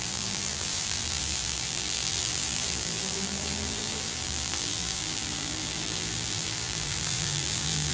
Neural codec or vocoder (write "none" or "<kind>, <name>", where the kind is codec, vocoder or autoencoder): vocoder, BigVGAN v2